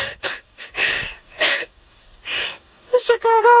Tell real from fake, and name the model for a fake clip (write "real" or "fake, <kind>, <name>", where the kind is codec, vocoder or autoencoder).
fake, codec, DAC